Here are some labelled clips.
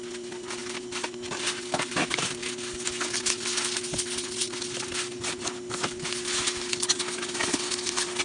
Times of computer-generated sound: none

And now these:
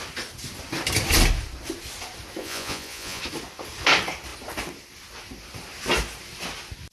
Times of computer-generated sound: 2.4-3.2 (vocoder, Vocos)

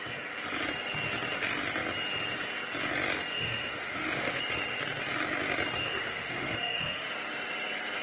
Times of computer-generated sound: 3.3-4.4 (autoencoder, DAC-VAE); 5.8-7.1

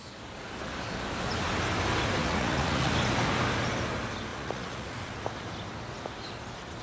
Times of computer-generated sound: 2.2-2.9 (vocoder, Vocos); 4.3-5.2

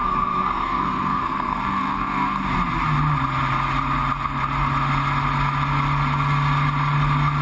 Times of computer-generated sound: 0.0-2.4 (codec, SNAC)

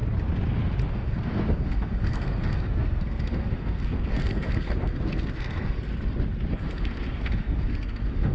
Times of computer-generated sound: 0.9-5.9 (codec, SNAC); 6.5-8.3